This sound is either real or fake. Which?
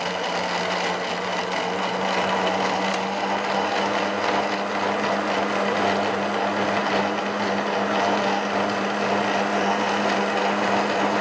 real